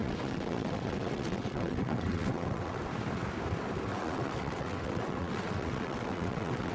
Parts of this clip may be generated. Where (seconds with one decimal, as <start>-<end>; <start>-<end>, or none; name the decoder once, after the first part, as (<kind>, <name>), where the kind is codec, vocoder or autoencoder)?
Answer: 0.0-2.8 (vocoder, WaveNeXt); 3.9-6.7